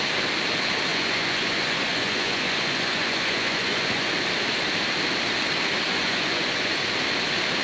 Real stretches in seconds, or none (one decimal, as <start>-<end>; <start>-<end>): 0.0-0.9; 4.1-5.9; 6.8-7.6